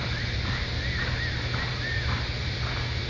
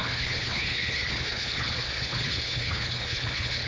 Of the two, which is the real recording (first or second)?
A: first